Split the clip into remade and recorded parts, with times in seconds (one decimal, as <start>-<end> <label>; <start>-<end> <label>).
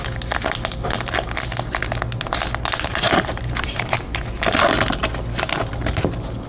0.0-2.9 recorded; 2.9-4.0 remade; 4.0-6.5 recorded